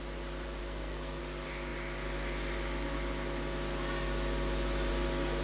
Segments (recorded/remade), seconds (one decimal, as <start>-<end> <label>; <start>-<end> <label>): 0.0-0.6 recorded; 0.6-1.2 remade; 1.2-5.4 recorded